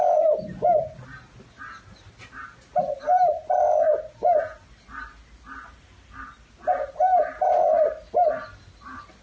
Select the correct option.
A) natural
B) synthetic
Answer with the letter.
A